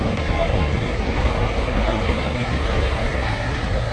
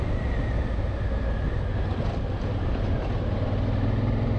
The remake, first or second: first